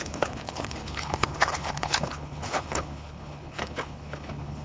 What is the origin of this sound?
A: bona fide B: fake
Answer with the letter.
B